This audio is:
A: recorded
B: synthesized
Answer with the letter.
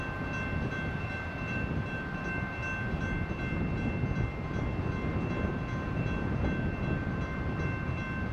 A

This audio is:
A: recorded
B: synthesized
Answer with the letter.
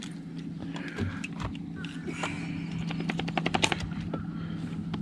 A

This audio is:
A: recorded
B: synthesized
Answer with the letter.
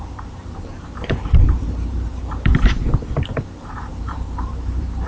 B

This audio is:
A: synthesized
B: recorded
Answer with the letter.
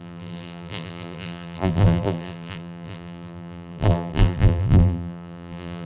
A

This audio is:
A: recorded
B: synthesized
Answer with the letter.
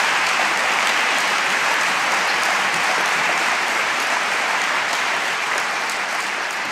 B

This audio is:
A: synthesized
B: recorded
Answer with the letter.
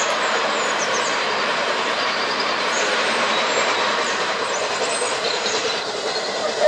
A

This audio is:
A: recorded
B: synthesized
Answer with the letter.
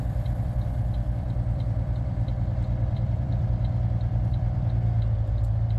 B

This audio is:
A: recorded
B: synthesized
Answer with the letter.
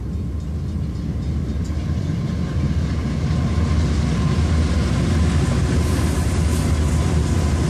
A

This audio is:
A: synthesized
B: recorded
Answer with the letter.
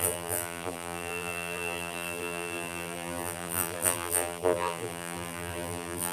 A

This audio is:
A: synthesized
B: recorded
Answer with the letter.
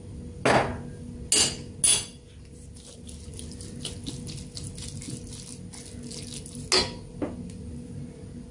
B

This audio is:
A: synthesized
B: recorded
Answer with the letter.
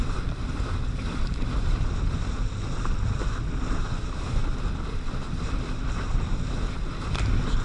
B